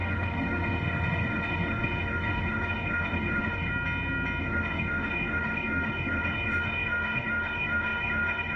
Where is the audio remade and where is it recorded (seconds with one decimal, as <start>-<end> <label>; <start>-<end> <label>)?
0.0-3.7 remade; 3.7-4.4 recorded; 4.4-8.6 remade